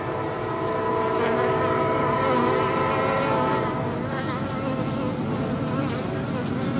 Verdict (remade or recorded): recorded